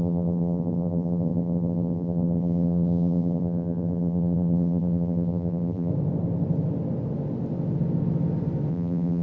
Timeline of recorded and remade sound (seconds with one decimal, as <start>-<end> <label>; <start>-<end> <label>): 0.0-5.9 remade; 5.9-8.7 recorded; 8.7-9.2 remade